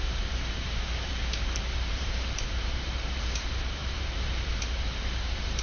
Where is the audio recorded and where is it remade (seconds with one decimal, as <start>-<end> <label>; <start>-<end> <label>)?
0.0-5.6 remade